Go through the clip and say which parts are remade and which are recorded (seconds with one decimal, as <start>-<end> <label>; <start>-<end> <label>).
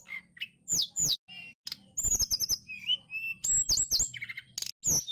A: 0.0-5.1 recorded